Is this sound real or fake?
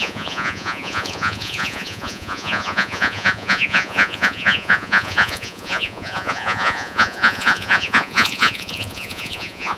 fake